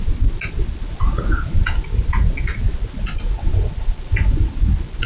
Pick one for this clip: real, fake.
real